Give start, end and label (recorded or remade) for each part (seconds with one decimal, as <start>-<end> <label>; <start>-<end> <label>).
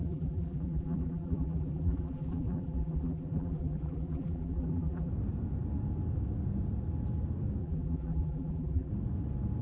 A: 0.0-5.1 remade; 5.1-7.6 recorded; 7.6-8.9 remade; 8.9-9.6 recorded